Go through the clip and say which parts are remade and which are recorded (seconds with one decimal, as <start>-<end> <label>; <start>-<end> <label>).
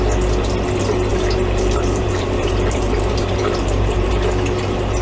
0.0-1.1 recorded; 1.1-4.1 remade; 4.1-5.0 recorded